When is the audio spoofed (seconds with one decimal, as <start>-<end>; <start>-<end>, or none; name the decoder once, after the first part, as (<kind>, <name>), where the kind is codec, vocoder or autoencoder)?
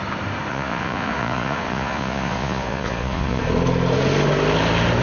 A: 0.5-3.4 (vocoder, Vocos)